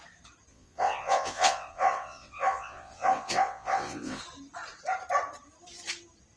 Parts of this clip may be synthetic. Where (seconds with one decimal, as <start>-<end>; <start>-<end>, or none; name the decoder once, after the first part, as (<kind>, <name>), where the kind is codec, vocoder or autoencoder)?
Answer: 0.5-4.2 (vocoder, WaveNeXt)